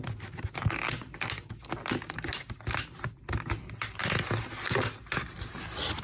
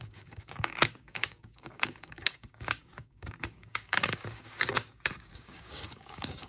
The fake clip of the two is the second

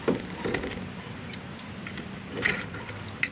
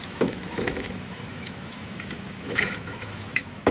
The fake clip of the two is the second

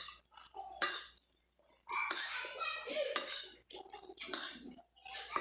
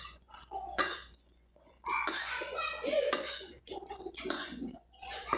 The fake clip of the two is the second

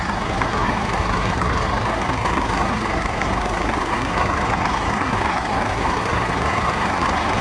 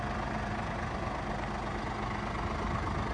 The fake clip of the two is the first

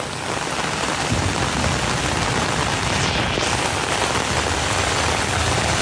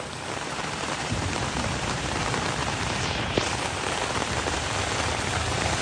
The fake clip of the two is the second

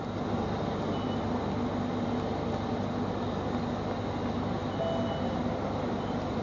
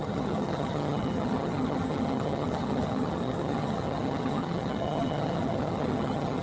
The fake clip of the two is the second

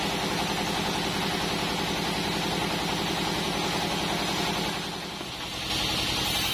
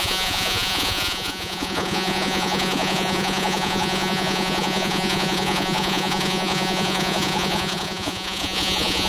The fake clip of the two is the second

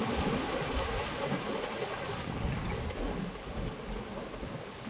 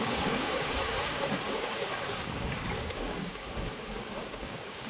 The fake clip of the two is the second